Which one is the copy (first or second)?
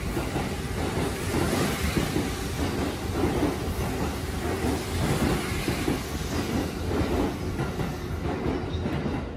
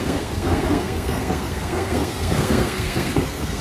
second